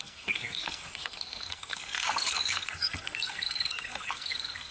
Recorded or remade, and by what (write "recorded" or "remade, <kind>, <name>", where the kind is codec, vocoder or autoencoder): remade, codec, SNAC